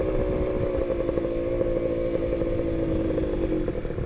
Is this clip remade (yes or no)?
no